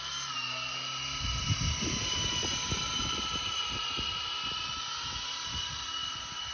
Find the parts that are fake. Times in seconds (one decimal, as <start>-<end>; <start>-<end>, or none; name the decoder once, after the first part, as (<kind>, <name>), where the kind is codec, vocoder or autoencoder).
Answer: none